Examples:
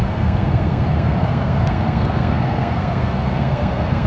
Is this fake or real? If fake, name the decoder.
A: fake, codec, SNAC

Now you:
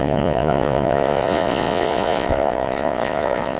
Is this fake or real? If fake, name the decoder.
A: fake, vocoder, Vocos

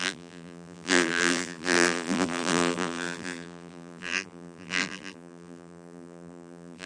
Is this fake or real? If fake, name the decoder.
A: fake, vocoder, BigVGAN v2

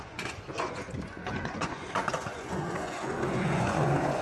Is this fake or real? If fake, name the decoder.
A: fake, vocoder, Vocos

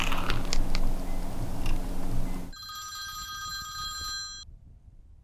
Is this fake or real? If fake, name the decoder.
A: real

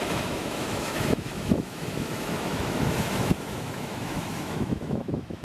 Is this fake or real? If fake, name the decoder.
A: fake, autoencoder, DAC-VAE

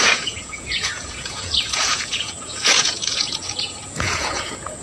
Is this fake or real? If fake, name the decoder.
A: fake, vocoder, Vocos